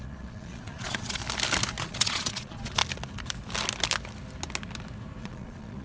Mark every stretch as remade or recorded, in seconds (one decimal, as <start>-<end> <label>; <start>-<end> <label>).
0.0-1.2 remade; 1.2-1.8 recorded; 1.8-2.8 remade; 2.8-5.2 recorded; 5.2-5.8 remade